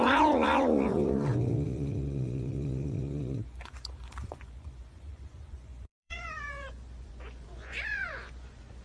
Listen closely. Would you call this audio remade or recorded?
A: remade